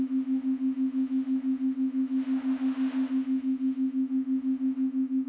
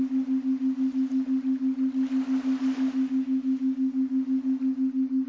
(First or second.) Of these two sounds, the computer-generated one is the first